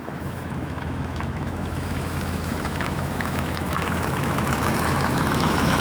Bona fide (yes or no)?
no